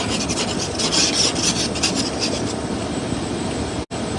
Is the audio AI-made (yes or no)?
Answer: no